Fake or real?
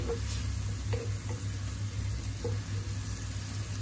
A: real